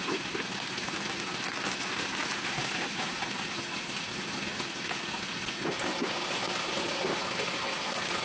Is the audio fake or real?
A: real